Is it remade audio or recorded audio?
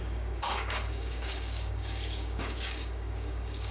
remade